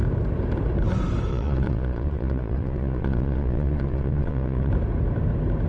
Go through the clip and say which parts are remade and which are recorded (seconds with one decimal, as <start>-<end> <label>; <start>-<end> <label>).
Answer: 0.0-1.3 recorded; 1.3-4.7 remade; 4.7-5.7 recorded